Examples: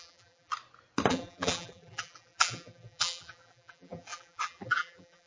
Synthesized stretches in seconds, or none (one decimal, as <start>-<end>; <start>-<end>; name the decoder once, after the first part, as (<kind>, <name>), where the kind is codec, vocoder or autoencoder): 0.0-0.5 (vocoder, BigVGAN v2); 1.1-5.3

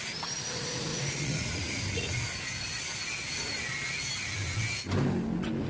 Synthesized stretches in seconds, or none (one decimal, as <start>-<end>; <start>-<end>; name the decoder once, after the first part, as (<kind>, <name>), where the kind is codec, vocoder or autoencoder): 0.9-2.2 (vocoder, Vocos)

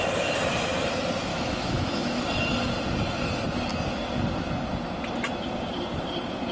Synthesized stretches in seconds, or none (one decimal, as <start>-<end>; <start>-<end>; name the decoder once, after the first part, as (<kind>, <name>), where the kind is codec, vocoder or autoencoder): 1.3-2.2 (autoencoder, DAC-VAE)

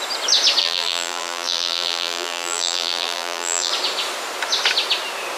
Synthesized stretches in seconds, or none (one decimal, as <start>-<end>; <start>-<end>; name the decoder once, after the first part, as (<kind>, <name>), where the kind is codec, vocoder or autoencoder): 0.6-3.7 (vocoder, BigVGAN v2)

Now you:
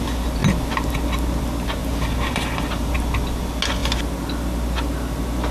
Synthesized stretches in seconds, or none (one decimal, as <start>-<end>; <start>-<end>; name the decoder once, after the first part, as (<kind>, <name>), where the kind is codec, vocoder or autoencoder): 1.8-2.9 (vocoder, BigVGAN v2)